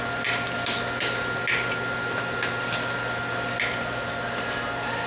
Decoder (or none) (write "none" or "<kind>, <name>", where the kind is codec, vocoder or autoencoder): none